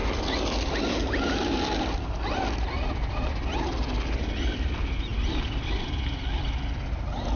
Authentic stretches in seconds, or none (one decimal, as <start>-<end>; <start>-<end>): 0.0-7.4